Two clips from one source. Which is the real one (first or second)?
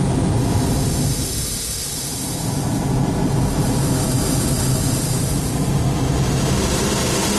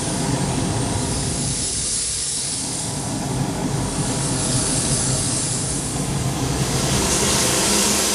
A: first